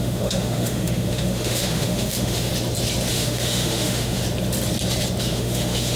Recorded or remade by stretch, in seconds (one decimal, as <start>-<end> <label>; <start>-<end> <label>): 0.0-2.5 remade; 2.5-3.1 recorded; 3.1-4.2 remade; 4.2-5.2 recorded; 5.2-6.0 remade

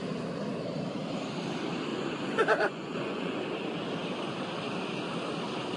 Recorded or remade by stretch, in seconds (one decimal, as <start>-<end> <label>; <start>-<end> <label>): 0.0-1.9 recorded; 1.9-3.4 remade; 3.4-5.8 recorded

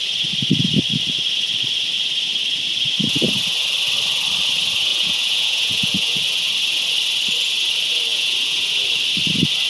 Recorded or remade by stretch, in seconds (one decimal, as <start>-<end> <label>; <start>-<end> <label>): 0.0-4.9 recorded; 4.9-6.2 remade; 6.2-8.1 recorded; 8.1-8.7 remade; 8.7-9.7 recorded